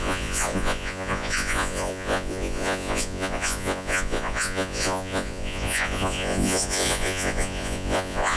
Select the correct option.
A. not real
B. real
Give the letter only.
A